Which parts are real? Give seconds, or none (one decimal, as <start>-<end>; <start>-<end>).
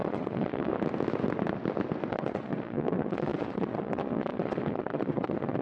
0.7-2.1